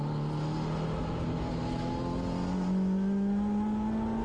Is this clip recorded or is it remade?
recorded